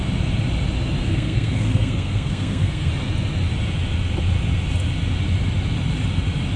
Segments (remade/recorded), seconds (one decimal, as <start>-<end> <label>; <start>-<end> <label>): 0.0-1.0 recorded; 1.0-2.9 remade; 2.9-6.6 recorded